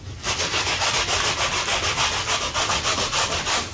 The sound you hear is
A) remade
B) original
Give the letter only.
B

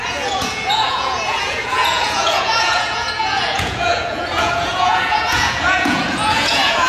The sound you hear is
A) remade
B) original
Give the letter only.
A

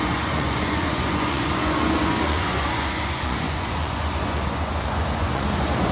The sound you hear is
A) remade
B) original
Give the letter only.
A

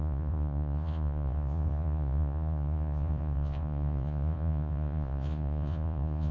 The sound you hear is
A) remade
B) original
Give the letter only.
A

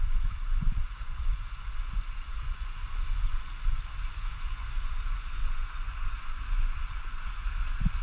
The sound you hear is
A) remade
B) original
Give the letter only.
A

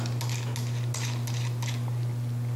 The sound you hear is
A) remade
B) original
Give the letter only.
B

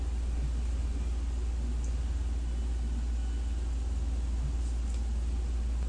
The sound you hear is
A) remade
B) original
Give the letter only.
B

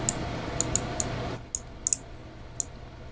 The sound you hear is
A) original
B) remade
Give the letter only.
A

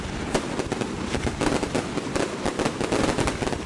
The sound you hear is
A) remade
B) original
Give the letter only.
B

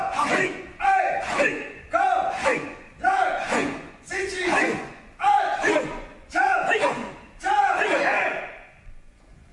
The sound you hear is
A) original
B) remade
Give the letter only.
B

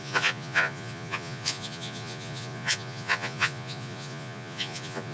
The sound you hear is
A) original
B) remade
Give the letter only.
B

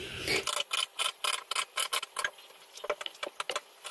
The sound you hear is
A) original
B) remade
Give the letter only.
A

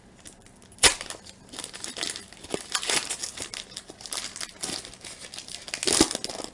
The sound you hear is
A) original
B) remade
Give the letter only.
A